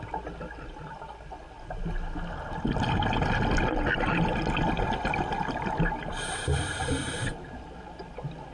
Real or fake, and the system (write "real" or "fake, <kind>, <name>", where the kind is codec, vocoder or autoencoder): real